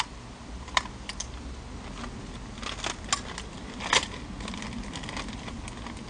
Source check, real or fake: real